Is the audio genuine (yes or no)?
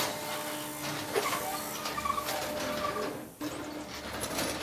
yes